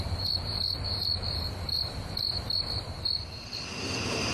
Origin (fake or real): fake